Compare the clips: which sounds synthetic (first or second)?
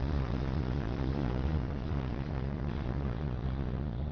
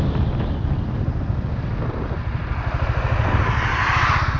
first